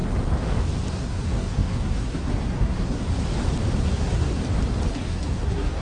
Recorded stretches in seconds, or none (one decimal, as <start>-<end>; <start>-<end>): 0.0-0.9; 3.1-3.8; 4.3-4.9